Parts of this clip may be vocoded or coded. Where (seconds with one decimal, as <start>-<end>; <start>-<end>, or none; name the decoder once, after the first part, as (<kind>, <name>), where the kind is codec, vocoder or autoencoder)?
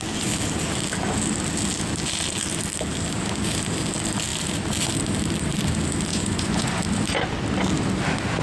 6.1-6.8 (vocoder, Vocos)